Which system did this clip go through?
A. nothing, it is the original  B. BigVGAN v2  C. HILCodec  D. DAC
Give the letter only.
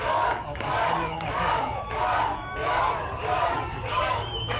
D